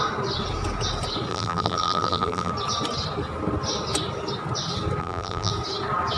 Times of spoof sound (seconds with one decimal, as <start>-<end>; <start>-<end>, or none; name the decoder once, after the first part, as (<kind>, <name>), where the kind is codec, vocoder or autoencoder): 1.3-2.5 (vocoder, BigVGAN v2); 5.0-5.5